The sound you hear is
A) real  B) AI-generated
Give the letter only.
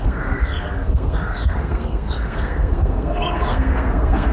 B